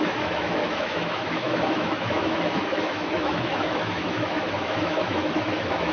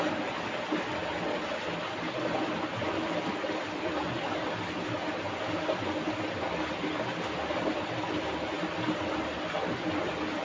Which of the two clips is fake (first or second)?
first